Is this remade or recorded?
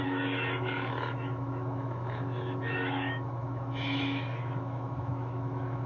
remade